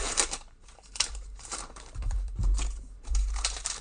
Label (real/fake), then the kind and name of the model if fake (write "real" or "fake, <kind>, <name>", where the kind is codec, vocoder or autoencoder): fake, vocoder, BigVGAN v2